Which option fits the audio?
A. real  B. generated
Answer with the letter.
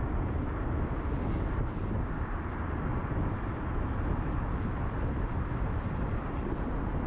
A